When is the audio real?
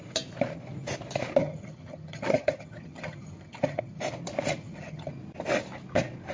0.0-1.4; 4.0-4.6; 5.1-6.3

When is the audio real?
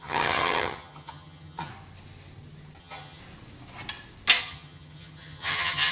1.7-2.8; 3.2-4.4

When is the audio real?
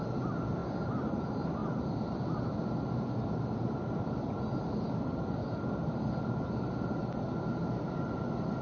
0.0-0.6; 1.2-1.6; 6.3-8.6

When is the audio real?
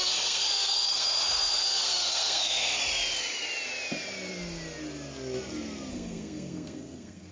2.8-5.9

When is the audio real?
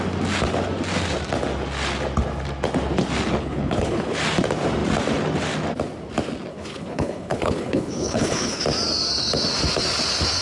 0.0-3.4; 4.2-6.5; 8.6-10.4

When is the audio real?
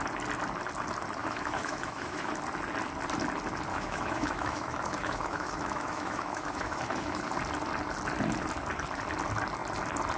0.0-1.2; 2.3-3.7; 7.2-10.2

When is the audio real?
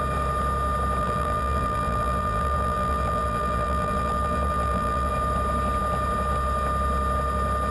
0.0-1.0; 5.1-7.7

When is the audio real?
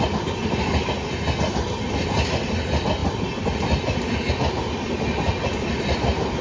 0.0-6.4